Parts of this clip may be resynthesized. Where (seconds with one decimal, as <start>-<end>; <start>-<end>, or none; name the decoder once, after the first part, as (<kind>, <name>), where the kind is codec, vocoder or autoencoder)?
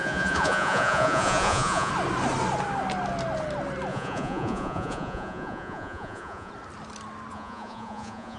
0.0-1.9 (vocoder, Vocos); 3.9-6.5; 7.3-8.4